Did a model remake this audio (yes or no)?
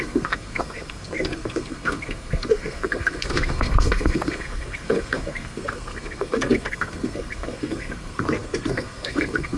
yes